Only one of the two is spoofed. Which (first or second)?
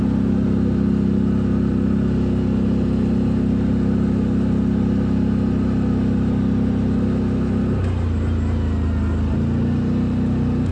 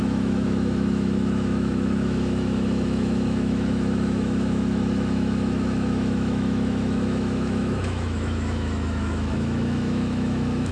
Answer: second